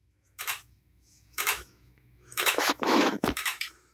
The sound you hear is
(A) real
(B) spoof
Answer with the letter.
B